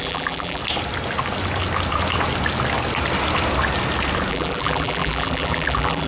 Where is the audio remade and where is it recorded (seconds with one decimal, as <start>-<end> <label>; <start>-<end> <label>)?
0.0-0.6 remade; 0.6-4.3 recorded; 4.3-6.1 remade